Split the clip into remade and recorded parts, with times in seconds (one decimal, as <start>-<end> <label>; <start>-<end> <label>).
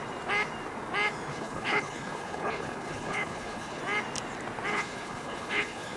0.0-1.3 recorded; 1.3-3.8 remade; 3.8-4.7 recorded; 4.7-6.0 remade